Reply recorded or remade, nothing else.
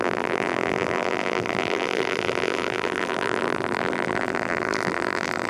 remade